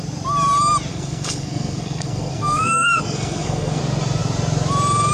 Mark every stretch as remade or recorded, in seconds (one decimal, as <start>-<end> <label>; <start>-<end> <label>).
0.0-0.9 recorded; 0.9-3.8 remade; 3.8-5.1 recorded